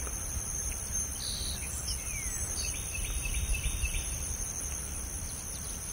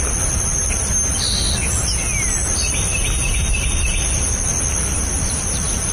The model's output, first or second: first